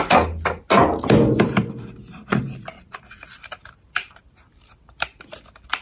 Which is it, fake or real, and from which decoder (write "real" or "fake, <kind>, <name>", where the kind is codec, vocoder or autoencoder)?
real